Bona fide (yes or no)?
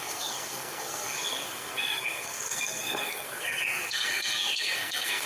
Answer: no